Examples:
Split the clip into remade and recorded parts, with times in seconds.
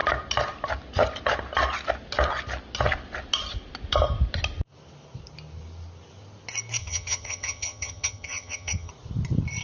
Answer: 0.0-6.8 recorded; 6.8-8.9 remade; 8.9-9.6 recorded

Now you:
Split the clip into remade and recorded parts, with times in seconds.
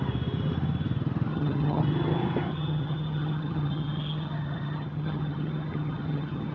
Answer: 0.0-1.3 recorded; 1.3-1.8 remade; 1.8-2.5 recorded; 2.5-6.5 remade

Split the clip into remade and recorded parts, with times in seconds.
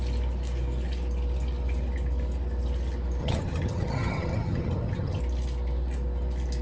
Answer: 0.0-3.2 recorded; 3.2-5.2 remade; 5.2-6.6 recorded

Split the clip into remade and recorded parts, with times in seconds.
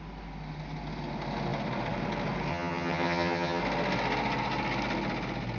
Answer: 0.0-2.5 recorded; 2.5-3.6 remade; 3.6-5.6 recorded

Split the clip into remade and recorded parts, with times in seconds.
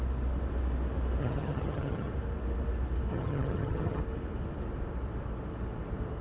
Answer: 0.0-1.2 recorded; 1.2-2.1 remade; 2.1-3.1 recorded; 3.1-4.0 remade; 4.0-6.2 recorded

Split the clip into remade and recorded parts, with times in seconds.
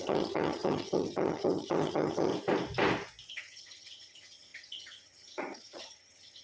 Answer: 0.0-2.3 remade; 2.3-3.3 recorded; 3.3-6.4 remade